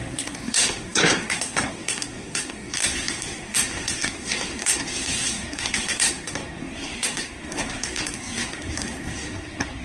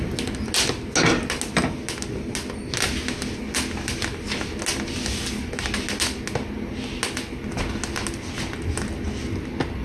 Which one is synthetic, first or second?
first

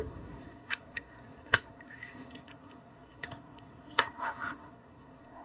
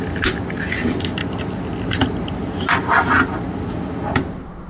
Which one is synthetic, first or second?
first